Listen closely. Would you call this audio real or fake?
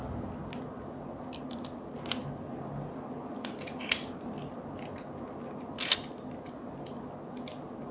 real